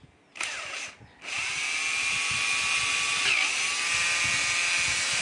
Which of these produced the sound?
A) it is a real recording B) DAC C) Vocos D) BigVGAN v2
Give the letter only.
A